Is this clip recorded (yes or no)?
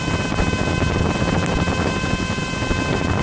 yes